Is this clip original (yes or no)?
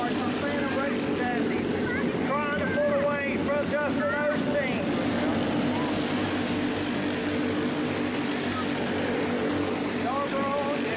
yes